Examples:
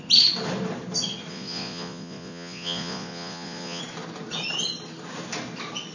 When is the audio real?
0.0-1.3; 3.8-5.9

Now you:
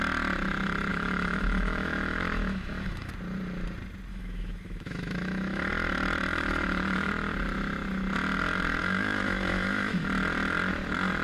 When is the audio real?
0.0-0.9; 3.1-4.1; 5.7-6.3; 7.1-8.8; 10.1-11.2

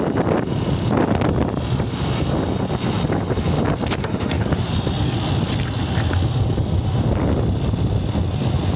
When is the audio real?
0.0-4.0; 4.7-8.8

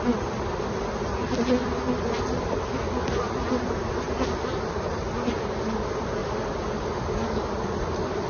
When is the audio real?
0.0-8.3

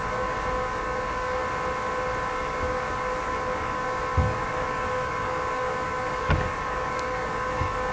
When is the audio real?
1.4-2.3